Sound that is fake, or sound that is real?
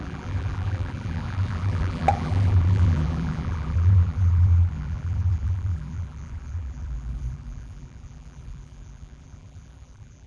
fake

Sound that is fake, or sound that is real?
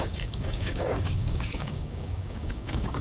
fake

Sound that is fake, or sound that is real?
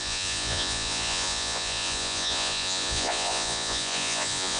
fake